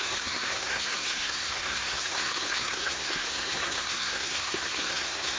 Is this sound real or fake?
fake